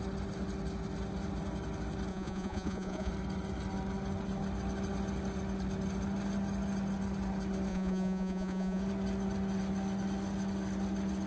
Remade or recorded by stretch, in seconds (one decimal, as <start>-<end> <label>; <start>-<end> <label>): 0.0-2.1 recorded; 2.1-3.1 remade; 3.1-7.7 recorded; 7.7-8.8 remade; 8.8-11.3 recorded